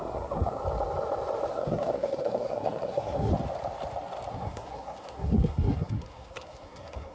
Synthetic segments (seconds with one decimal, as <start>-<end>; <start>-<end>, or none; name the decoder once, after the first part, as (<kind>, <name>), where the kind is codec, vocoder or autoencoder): 0.0-0.6 (codec, SNAC); 1.5-3.3; 4.3-7.1